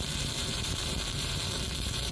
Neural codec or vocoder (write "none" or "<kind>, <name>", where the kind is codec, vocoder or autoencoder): vocoder, BigVGAN v2